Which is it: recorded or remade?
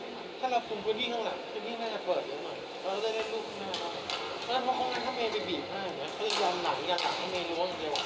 recorded